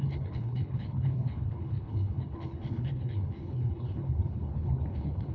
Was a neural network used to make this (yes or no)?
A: yes